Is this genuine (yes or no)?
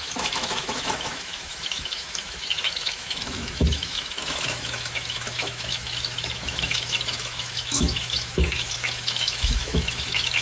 no